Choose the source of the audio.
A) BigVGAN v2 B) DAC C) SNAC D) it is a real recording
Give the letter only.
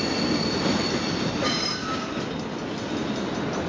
D